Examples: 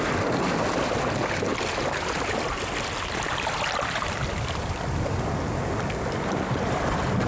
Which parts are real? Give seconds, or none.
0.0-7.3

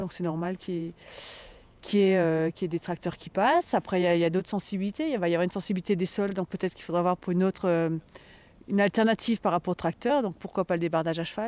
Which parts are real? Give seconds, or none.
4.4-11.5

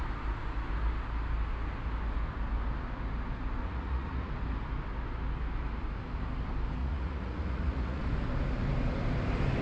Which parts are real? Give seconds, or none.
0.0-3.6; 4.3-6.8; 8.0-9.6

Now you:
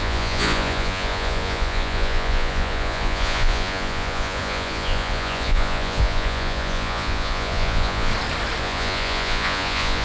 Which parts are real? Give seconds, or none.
8.1-8.6

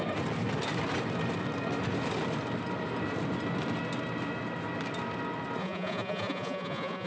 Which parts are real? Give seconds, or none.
0.0-5.6